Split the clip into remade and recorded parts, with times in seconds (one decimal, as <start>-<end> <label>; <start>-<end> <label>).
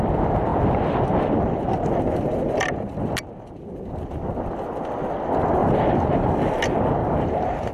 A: 0.0-5.6 recorded; 5.6-6.3 remade; 6.3-7.0 recorded; 7.0-7.7 remade